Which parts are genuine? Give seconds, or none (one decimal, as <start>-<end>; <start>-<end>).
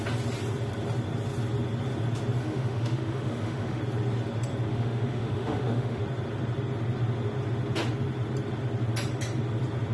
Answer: 0.0-2.4; 3.8-4.7; 6.0-9.9